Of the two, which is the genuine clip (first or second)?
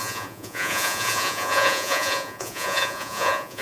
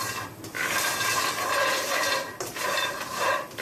second